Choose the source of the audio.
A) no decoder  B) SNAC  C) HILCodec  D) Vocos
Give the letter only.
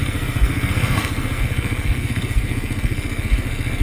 B